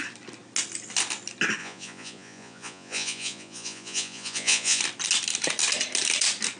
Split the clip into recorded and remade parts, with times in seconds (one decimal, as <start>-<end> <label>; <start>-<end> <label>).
0.0-1.6 recorded; 1.6-4.8 remade; 4.8-6.6 recorded